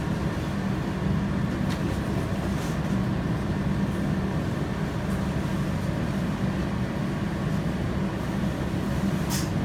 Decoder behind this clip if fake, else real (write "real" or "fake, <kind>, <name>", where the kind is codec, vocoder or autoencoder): real